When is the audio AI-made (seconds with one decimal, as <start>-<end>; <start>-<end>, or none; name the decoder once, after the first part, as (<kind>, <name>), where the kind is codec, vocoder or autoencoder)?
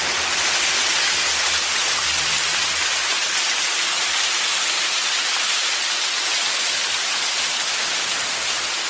none